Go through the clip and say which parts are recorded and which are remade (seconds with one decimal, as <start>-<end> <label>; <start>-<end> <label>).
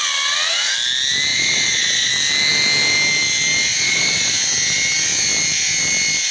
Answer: 0.0-1.3 recorded; 1.3-2.1 remade; 2.1-3.7 recorded; 3.7-4.3 remade; 4.3-6.3 recorded